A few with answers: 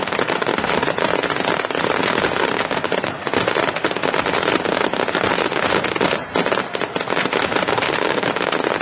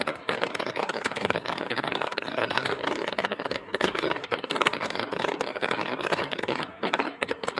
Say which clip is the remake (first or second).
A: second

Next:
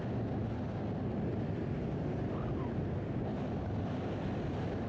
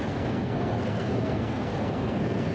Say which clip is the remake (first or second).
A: second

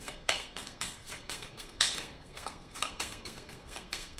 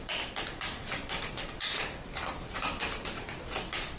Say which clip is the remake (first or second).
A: first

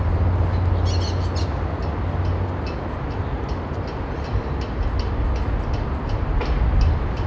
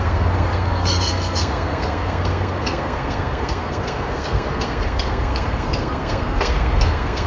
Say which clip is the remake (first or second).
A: second